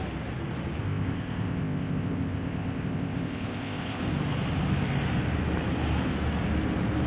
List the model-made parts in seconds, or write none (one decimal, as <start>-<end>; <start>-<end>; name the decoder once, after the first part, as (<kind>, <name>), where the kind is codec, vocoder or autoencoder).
0.8-4.0 (codec, ZipCodec)